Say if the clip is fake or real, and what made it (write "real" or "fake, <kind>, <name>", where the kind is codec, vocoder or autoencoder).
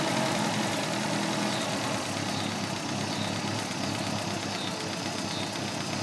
real